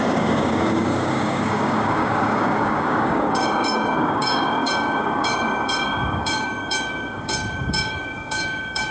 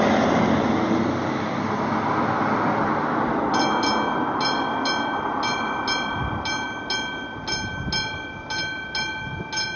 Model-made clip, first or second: first